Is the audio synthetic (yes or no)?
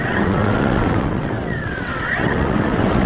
yes